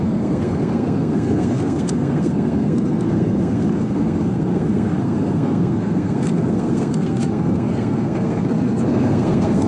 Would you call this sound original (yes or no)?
no